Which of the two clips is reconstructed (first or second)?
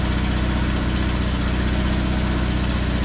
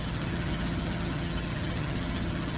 second